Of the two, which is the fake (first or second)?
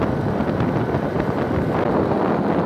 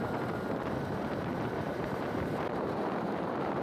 second